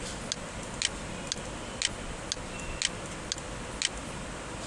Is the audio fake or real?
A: real